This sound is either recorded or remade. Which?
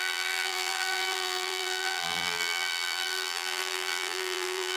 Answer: remade